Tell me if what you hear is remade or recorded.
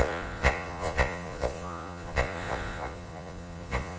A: remade